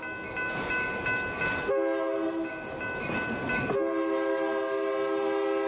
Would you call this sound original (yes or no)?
yes